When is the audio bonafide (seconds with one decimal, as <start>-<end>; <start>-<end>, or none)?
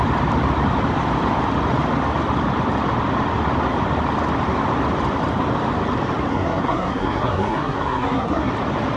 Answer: 0.0-6.3; 8.5-9.0